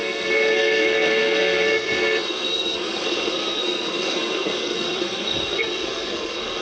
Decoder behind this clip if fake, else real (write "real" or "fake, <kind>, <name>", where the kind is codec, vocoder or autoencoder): fake, codec, SNAC